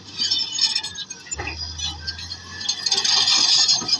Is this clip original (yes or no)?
yes